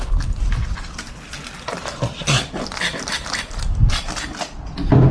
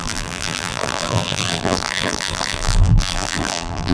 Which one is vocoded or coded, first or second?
second